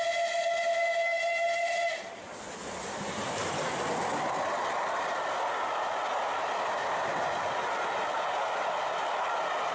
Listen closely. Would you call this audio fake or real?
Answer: real